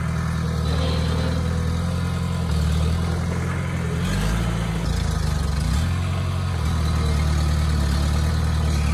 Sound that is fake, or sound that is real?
real